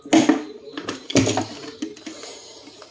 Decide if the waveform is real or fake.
real